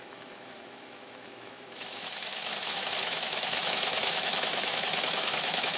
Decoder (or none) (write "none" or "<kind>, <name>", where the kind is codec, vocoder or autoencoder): autoencoder, DAC-VAE